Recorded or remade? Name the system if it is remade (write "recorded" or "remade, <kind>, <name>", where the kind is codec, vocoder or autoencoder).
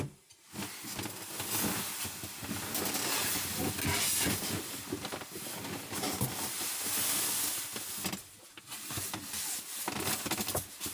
recorded